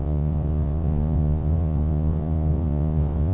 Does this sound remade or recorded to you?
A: remade